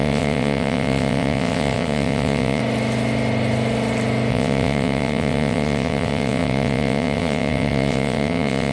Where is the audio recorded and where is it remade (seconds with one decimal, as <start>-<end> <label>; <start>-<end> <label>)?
0.0-2.6 remade; 2.6-4.3 recorded; 4.3-8.7 remade